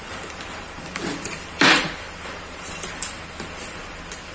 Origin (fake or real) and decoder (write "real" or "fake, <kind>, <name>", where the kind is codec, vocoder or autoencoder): fake, vocoder, BigVGAN v2